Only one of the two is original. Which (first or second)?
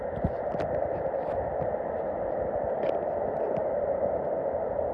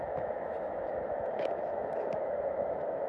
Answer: first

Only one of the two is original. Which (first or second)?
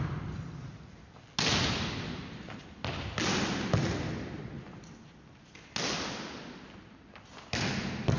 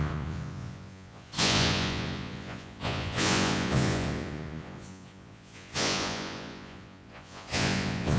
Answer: first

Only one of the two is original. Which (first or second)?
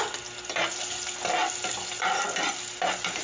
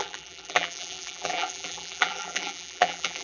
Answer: first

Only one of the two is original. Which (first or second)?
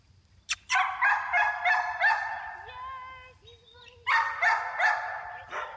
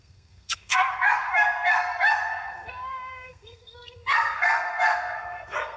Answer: first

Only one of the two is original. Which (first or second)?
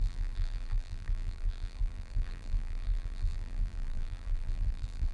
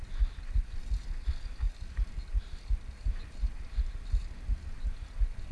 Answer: second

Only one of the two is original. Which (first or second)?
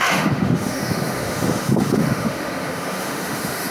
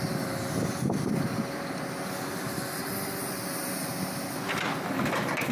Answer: second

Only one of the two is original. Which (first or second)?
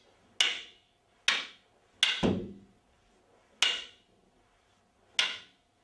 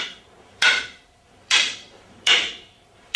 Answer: first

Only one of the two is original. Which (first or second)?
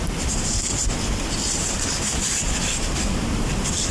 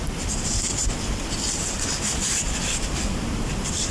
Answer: second